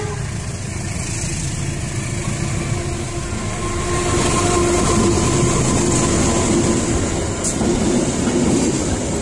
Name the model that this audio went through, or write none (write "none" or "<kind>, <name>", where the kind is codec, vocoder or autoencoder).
none